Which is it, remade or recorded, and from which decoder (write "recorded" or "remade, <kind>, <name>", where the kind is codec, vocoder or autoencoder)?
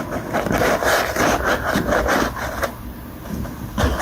recorded